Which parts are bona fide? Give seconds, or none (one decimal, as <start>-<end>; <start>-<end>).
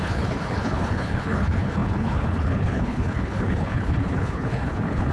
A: none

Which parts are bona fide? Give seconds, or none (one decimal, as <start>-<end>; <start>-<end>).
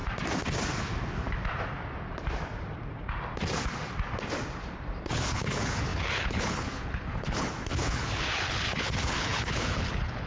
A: 0.0-5.0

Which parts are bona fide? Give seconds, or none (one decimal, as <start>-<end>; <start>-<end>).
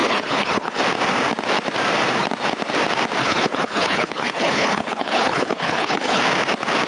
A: 0.8-3.2; 6.2-6.9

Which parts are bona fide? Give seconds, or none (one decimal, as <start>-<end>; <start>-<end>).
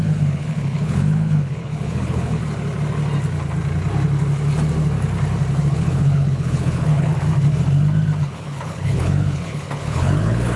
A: 2.4-5.7; 7.1-8.2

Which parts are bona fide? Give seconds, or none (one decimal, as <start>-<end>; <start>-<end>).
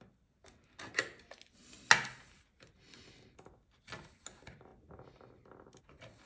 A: 0.0-6.3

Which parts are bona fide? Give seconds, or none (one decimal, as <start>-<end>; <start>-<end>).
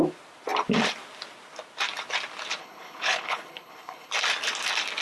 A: 0.0-2.6; 4.1-5.0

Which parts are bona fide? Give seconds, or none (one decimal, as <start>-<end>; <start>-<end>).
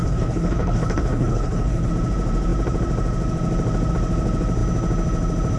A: 1.9-5.6